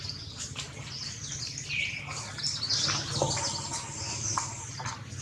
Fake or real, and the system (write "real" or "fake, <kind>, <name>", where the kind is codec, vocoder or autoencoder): real